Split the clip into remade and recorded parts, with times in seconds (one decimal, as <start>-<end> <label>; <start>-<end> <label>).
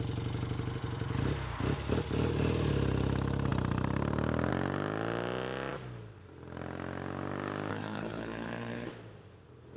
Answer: 0.0-7.7 recorded; 7.7-8.9 remade; 8.9-9.8 recorded